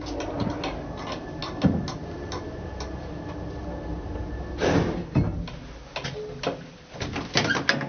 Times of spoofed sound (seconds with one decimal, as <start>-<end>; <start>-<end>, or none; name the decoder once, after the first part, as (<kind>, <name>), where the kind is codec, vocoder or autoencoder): none